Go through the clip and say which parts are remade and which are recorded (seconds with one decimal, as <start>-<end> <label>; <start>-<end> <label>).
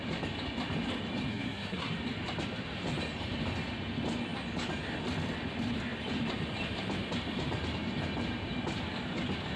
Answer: 0.0-1.3 recorded; 1.3-1.9 remade; 1.9-9.6 recorded